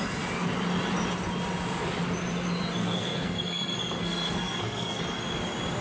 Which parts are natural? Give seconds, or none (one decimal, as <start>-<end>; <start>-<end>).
0.0-2.8; 5.0-5.8